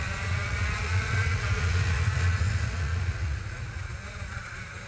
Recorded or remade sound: remade